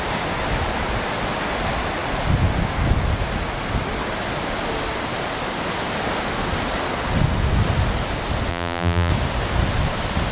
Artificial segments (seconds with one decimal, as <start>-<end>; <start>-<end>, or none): 8.5-9.1